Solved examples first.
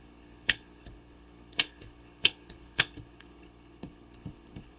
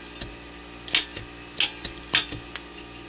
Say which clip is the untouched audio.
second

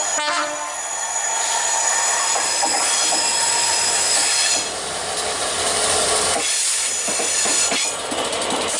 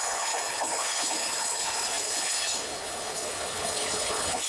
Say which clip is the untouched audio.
first